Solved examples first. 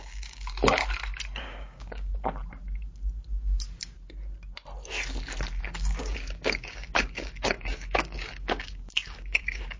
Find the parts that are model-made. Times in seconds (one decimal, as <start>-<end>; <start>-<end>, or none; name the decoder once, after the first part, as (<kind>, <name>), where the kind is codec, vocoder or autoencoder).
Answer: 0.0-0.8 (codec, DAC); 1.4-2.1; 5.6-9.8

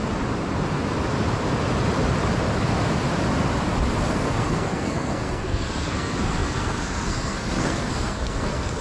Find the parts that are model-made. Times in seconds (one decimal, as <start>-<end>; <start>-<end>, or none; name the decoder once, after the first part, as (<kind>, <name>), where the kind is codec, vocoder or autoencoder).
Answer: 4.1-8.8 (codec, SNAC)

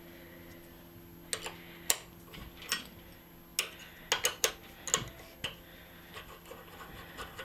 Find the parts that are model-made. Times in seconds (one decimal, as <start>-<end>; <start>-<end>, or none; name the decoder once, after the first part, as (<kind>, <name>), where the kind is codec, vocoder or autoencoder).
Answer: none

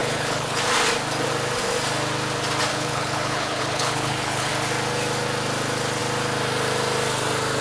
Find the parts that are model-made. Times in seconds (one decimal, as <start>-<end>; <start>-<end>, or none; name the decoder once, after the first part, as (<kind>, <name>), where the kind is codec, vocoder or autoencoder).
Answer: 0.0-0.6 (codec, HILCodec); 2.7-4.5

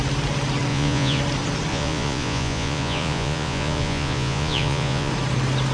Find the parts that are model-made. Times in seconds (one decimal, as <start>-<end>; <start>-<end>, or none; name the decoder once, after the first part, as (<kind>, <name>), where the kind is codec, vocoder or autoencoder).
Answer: 0.7-1.2 (vocoder, Vocos); 1.7-5.1

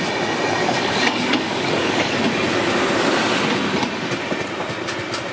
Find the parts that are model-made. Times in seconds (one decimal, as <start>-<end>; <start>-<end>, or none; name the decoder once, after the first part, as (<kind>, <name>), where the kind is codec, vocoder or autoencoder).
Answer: 0.6-2.2 (codec, DAC)

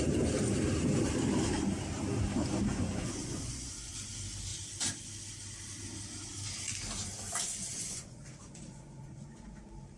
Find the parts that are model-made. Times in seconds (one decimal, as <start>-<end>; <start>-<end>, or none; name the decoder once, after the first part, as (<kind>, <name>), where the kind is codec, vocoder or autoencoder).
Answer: 2.7-4.1 (vocoder, Vocos); 7.5-9.6